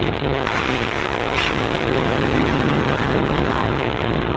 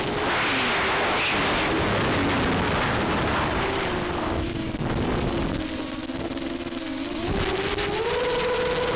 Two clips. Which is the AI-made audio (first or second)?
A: first